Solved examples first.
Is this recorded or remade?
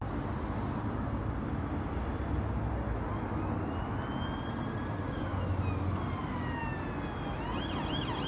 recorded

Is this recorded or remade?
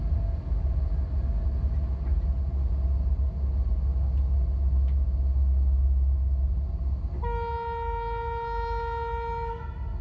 recorded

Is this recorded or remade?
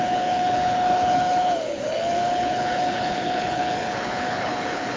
remade